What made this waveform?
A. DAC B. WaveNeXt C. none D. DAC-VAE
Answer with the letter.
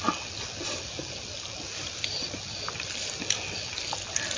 C